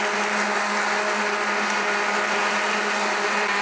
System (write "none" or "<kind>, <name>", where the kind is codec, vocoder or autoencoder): none